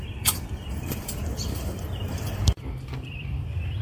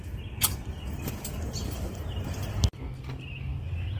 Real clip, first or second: second